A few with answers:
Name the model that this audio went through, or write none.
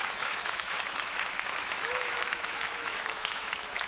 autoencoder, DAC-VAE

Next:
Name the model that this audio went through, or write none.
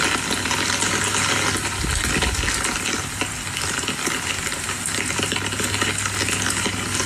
none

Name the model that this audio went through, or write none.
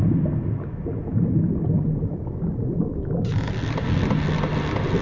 none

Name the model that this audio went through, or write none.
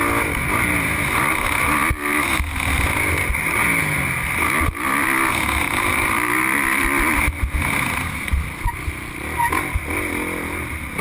none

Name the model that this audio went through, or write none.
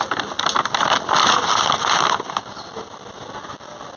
none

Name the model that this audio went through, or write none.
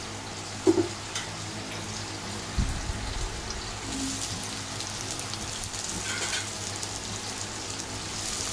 none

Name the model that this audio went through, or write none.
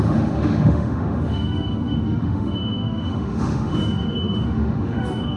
autoencoder, DAC-VAE